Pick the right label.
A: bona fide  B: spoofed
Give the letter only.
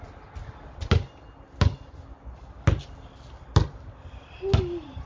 A